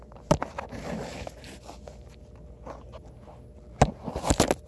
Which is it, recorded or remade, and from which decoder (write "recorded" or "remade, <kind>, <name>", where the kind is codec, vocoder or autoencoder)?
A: recorded